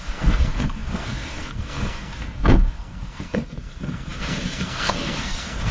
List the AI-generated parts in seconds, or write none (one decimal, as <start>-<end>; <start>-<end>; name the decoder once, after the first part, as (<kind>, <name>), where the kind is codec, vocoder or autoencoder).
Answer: 0.0-5.7 (codec, SNAC)